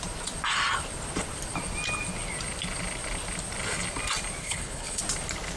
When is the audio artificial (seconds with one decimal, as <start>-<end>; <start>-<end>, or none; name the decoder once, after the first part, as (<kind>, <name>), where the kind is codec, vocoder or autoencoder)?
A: 4.4-5.0 (codec, HILCodec)